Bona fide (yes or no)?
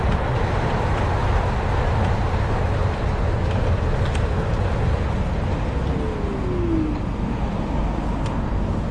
yes